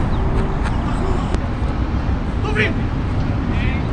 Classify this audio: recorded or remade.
recorded